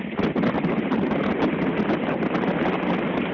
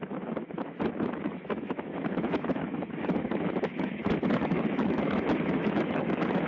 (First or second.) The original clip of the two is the first